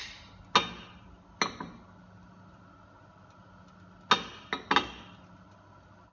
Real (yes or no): yes